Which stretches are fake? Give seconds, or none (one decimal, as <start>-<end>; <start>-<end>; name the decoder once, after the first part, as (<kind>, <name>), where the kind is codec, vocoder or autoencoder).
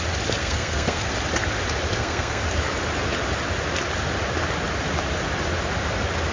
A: 0.4-1.1 (codec, SNAC); 1.9-2.4